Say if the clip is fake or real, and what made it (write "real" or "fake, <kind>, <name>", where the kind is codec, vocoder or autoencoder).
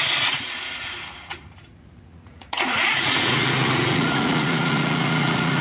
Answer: fake, vocoder, Vocos